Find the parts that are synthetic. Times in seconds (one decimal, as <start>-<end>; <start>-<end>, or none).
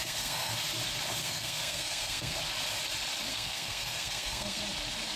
0.0-0.5; 1.2-2.4; 3.3-4.6